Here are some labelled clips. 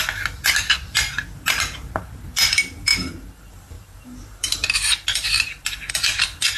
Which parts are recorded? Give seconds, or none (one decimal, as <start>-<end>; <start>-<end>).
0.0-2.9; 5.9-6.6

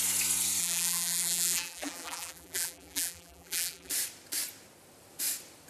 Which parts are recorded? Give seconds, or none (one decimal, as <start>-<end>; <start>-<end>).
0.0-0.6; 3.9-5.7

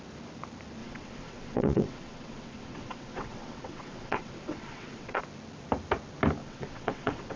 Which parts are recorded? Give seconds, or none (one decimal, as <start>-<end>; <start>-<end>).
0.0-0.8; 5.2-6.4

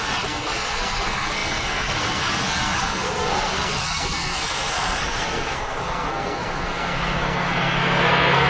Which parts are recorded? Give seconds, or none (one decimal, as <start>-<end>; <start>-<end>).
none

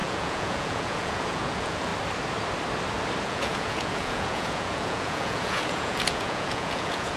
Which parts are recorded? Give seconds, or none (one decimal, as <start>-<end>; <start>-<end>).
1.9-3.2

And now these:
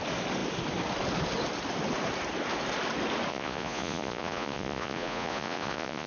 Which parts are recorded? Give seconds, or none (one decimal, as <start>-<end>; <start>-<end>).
0.0-3.3